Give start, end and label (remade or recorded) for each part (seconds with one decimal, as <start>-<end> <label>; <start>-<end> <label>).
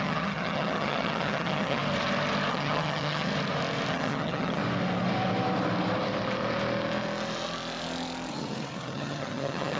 0.0-1.8 remade; 1.8-2.5 recorded; 2.5-3.3 remade; 3.3-3.9 recorded; 3.9-4.6 remade; 4.6-8.3 recorded; 8.3-9.8 remade